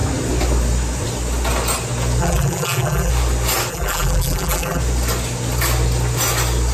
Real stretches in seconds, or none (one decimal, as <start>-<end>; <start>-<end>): 0.0-2.2; 3.1-3.7; 4.8-6.7